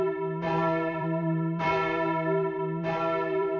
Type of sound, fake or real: fake